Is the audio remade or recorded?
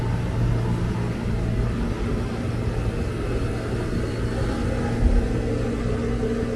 recorded